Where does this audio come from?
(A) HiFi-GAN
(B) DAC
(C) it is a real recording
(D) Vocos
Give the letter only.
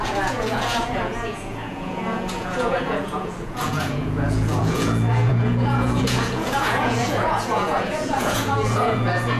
D